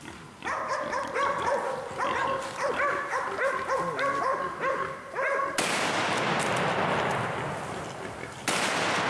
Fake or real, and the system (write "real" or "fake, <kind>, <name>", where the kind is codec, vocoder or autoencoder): real